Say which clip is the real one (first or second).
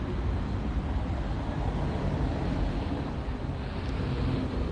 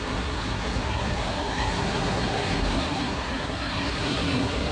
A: first